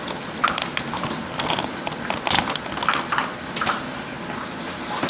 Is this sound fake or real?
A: real